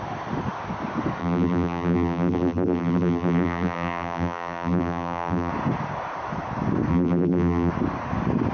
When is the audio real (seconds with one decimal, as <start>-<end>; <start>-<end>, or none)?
0.0-1.2; 5.5-6.9; 7.7-8.5